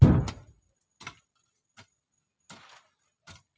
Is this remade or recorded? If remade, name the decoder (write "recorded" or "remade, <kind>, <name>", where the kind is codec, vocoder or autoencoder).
recorded